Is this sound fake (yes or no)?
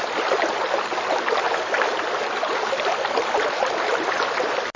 no